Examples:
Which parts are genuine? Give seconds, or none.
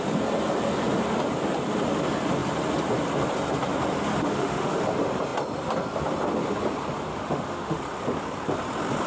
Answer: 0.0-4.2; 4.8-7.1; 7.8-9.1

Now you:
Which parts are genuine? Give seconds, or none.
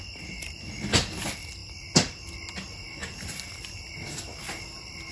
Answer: 0.0-5.1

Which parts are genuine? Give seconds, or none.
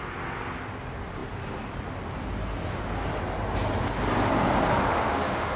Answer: 0.0-4.9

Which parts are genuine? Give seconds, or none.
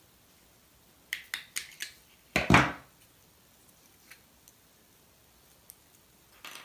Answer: 0.0-6.6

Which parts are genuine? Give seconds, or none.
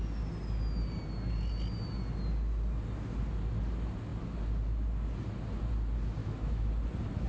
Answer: 0.0-6.2; 6.7-7.3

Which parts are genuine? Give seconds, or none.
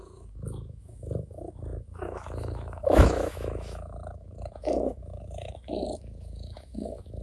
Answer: none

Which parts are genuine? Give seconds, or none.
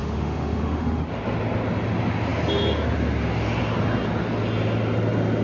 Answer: 1.0-5.4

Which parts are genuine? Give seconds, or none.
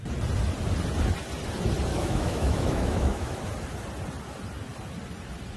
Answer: 0.0-1.9; 3.4-5.6